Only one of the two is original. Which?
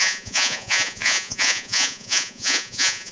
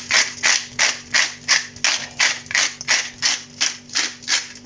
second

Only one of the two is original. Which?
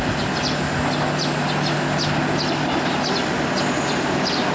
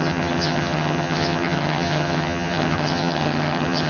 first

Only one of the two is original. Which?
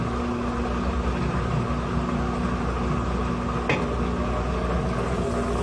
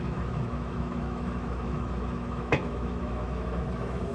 first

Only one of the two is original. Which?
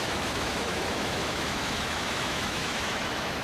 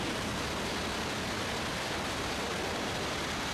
second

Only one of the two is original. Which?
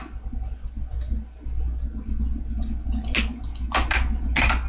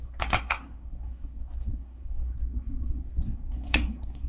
first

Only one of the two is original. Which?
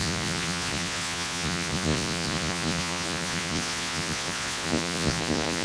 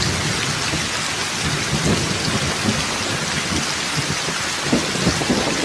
second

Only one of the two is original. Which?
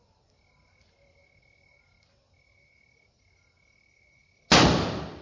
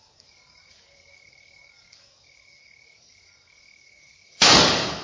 first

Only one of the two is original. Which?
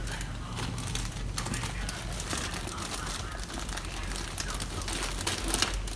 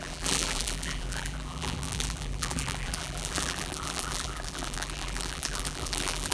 first